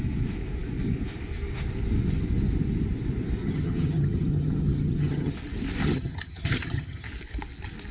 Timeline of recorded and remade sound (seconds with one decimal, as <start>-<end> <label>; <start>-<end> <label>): 0.0-3.4 recorded; 3.4-5.3 remade; 5.3-5.8 recorded; 5.8-7.1 remade; 7.1-7.9 recorded